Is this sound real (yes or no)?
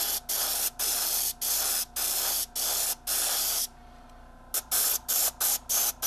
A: yes